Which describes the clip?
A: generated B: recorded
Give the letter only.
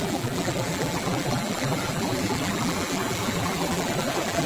A